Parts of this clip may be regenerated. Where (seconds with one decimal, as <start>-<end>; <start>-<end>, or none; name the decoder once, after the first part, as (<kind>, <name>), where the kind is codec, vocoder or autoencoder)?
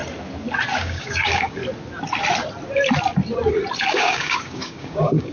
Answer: 0.8-1.6 (codec, DAC); 3.9-5.3